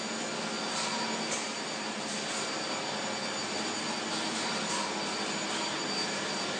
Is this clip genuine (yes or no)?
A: yes